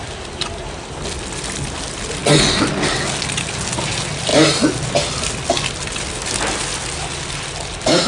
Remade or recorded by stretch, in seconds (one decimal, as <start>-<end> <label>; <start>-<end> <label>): 0.0-8.1 recorded